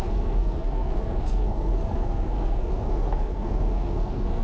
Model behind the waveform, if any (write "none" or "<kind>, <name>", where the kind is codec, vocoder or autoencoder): codec, SNAC